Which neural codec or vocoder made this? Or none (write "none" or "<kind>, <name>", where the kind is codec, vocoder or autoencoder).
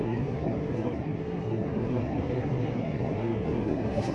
codec, SNAC